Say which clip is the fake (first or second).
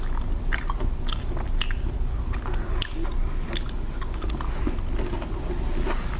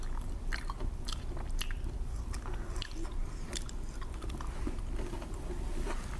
second